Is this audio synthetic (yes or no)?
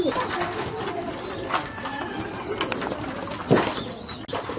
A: no